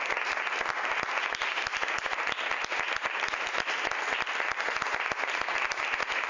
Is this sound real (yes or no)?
yes